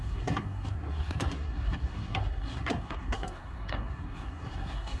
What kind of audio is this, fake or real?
fake